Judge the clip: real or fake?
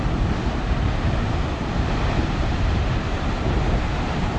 fake